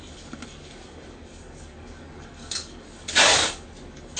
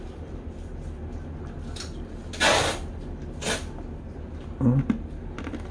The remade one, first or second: first